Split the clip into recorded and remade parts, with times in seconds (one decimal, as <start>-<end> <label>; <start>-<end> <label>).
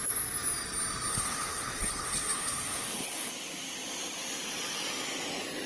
0.0-1.1 recorded; 1.1-3.3 remade; 3.3-5.7 recorded